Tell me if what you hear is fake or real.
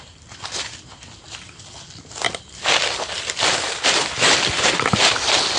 real